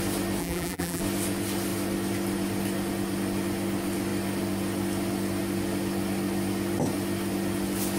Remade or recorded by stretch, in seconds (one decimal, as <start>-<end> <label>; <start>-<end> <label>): 0.0-0.4 recorded; 0.4-1.0 remade; 1.0-8.0 recorded